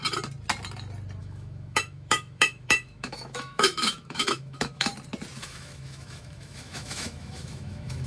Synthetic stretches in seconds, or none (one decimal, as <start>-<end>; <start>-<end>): 1.2-4.9; 5.4-8.1